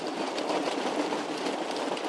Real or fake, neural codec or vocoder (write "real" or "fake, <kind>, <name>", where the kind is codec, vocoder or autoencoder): real